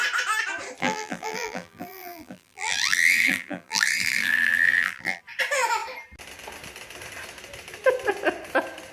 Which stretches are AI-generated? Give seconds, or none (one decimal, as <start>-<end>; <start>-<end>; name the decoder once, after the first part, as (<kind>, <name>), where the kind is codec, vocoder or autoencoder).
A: 0.8-5.2 (vocoder, BigVGAN v2)